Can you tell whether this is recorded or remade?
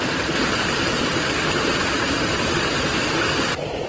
recorded